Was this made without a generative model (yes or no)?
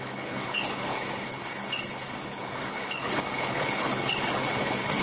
no